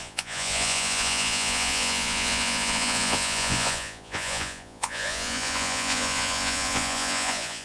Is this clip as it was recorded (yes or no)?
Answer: no